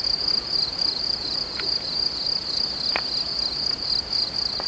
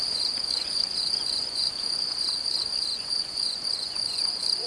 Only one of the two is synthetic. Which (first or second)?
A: second